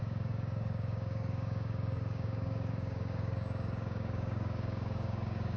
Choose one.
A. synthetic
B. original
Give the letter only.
A